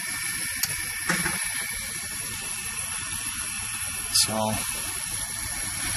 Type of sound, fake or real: real